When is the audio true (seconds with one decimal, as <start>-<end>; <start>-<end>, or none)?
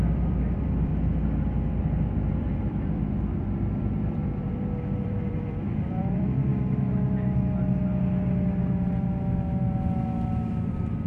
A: 0.9-1.8; 6.5-10.5